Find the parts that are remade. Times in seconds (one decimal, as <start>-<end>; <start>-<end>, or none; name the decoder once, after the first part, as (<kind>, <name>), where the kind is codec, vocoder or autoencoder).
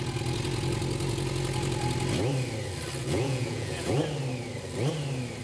3.0-4.0 (vocoder, Vocos)